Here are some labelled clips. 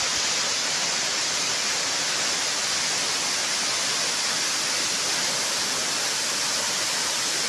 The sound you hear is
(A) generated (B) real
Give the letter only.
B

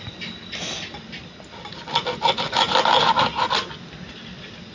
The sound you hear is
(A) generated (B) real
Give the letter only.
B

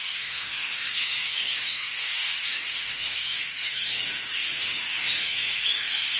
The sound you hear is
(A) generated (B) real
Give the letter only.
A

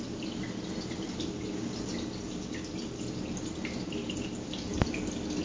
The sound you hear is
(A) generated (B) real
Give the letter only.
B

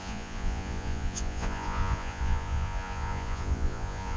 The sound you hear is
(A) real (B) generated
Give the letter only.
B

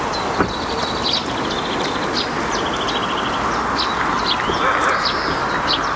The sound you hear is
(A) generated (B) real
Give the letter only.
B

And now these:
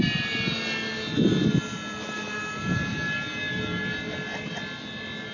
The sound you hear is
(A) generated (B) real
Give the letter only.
B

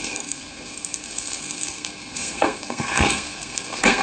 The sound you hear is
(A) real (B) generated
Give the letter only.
B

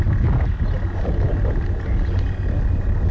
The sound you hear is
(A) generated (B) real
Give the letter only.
B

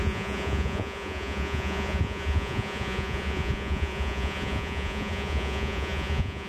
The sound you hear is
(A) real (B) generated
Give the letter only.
B